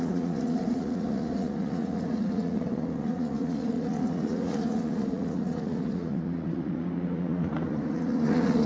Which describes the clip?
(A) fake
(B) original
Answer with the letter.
A